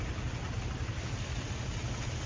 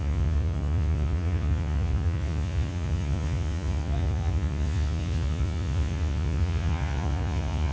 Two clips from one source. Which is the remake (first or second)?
second